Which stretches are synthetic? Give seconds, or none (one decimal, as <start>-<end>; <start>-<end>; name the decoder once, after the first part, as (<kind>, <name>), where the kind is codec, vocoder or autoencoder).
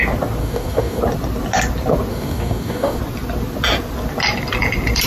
0.4-1.0 (codec, DAC); 2.1-3.0